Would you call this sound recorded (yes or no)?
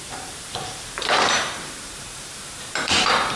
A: no